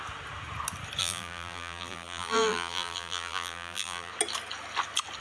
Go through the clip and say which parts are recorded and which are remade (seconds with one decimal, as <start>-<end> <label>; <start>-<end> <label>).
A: 0.0-1.0 recorded; 1.0-4.1 remade; 4.1-5.2 recorded